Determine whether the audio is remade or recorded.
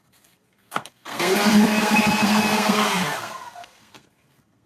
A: remade